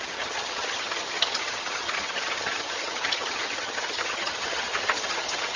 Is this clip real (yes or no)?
no